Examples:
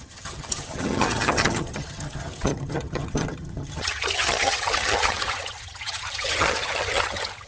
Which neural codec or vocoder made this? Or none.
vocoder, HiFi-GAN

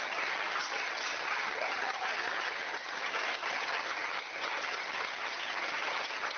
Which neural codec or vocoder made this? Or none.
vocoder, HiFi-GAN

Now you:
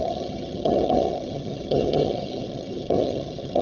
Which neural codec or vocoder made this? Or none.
vocoder, HiFi-GAN